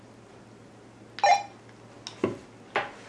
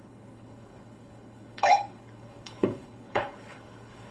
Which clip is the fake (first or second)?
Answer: second